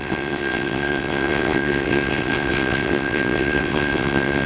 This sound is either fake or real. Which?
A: fake